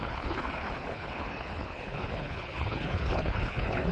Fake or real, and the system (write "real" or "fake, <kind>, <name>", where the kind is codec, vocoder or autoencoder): fake, codec, HILCodec